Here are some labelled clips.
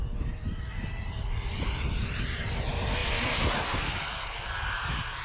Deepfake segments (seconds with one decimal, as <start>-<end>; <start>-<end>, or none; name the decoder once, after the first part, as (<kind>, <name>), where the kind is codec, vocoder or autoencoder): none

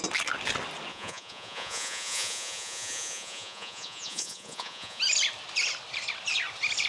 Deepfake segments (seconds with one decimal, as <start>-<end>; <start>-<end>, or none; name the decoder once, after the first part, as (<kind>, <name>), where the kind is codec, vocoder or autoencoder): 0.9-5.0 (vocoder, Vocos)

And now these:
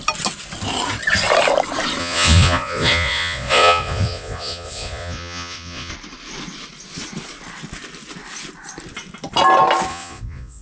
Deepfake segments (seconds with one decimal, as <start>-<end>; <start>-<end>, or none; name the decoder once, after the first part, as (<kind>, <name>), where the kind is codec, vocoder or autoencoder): 2.0-5.9 (vocoder, Vocos); 9.9-10.6